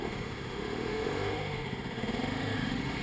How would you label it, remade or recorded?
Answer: remade